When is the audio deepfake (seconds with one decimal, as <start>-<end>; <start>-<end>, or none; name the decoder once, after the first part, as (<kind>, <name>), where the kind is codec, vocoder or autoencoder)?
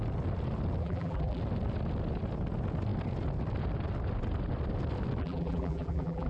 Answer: 0.8-1.4 (vocoder, BigVGAN v2); 5.2-6.3